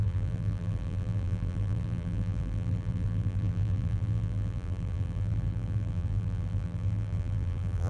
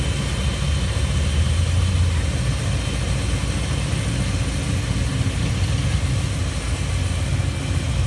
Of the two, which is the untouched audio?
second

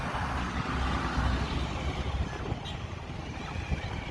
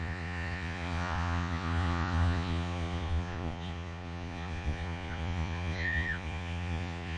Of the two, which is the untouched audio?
first